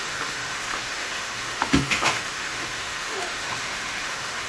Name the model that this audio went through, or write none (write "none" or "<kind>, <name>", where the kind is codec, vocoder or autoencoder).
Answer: autoencoder, DAC-VAE